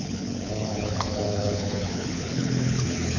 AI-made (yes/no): yes